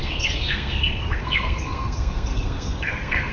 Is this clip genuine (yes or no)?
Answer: no